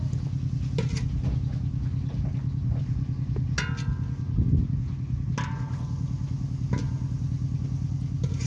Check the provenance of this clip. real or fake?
real